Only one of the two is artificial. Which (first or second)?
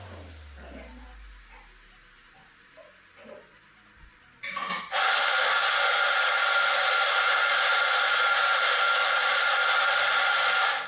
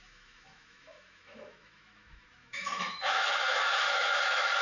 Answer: second